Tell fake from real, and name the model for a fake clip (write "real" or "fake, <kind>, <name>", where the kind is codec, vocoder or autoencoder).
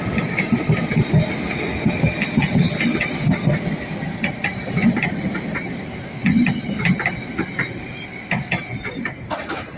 real